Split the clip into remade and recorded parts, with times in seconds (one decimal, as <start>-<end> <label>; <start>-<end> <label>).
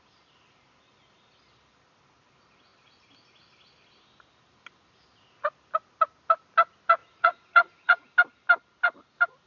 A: 0.0-7.0 recorded; 7.0-8.1 remade; 8.1-9.5 recorded